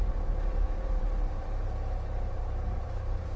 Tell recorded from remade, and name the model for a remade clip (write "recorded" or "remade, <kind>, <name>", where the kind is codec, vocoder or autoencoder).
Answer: remade, vocoder, BigVGAN v2